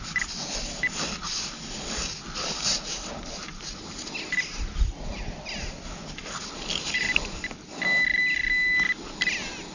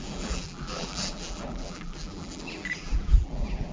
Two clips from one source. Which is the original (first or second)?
first